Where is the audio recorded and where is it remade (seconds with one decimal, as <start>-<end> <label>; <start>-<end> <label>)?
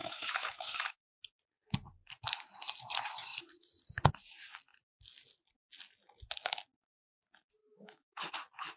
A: 0.0-1.1 remade; 1.1-7.6 recorded; 7.6-8.3 remade; 8.3-8.8 recorded